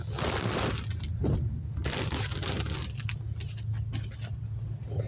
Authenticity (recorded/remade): recorded